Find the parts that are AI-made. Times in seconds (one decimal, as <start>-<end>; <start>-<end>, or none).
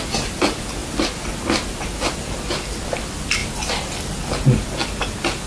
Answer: none